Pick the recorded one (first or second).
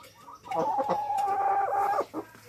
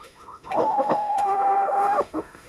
first